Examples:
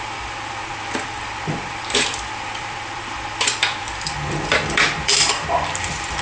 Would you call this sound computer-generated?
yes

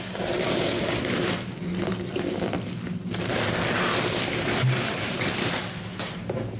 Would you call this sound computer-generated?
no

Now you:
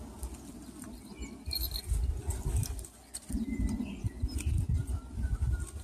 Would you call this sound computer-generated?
no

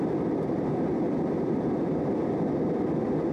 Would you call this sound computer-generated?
no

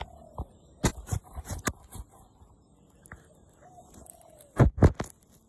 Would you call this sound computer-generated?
no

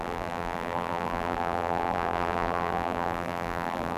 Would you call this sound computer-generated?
yes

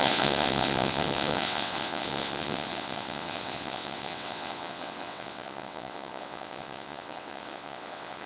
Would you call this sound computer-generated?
yes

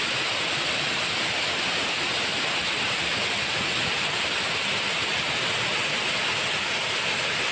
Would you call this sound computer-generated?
no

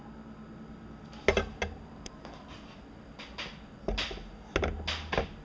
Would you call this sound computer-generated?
no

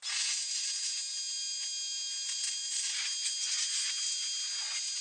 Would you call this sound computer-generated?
no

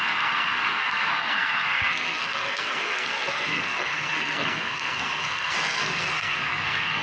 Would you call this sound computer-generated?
yes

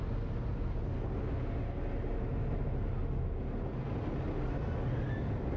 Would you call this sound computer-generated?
no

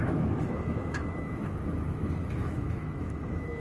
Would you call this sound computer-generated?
yes